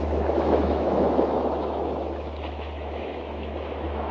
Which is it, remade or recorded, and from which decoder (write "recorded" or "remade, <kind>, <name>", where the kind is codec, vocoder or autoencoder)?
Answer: remade, autoencoder, DAC-VAE